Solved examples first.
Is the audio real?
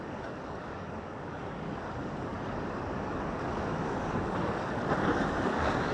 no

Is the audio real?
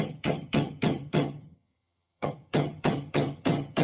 no